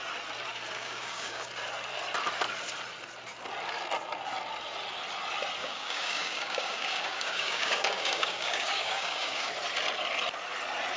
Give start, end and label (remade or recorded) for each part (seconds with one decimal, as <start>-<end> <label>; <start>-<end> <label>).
0.0-0.8 recorded; 0.8-1.5 remade; 1.5-5.6 recorded; 5.6-9.5 remade; 9.5-11.0 recorded